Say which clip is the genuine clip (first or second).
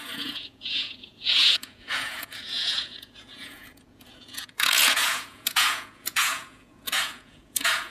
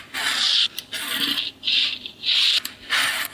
second